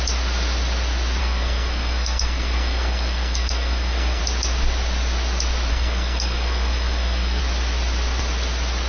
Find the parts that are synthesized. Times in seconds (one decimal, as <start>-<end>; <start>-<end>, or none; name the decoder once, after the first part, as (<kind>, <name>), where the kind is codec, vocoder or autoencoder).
1.2-4.2 (codec, SNAC); 5.7-7.4

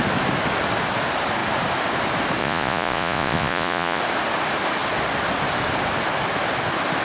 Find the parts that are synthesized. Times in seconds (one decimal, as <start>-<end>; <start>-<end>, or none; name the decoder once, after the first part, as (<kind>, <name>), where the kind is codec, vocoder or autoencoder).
2.4-4.0 (vocoder, Vocos)

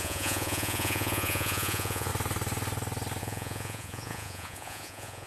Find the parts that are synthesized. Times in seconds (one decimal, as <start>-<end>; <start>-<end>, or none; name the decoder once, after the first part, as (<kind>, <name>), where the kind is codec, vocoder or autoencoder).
0.0-2.1 (vocoder, Vocos); 3.2-5.3